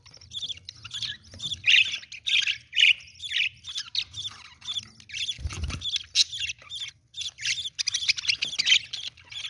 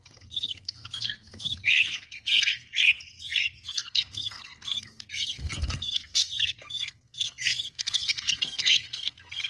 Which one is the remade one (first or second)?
second